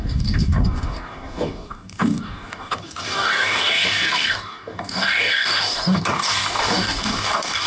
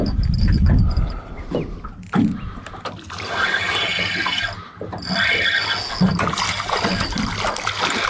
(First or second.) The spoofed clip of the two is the first